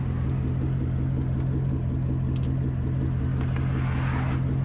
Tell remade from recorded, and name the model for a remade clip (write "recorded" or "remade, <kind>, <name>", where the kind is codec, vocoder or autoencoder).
recorded